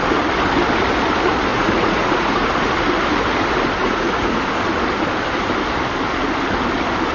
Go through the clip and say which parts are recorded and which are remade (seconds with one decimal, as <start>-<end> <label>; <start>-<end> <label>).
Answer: 0.0-1.5 recorded; 1.5-2.5 remade; 2.5-3.8 recorded; 3.8-4.4 remade; 4.4-7.1 recorded